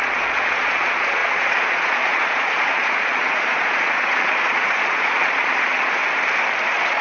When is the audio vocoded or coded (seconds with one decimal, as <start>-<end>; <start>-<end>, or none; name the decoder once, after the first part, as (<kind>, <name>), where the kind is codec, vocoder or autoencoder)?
0.0-6.0 (vocoder, Vocos); 6.6-7.0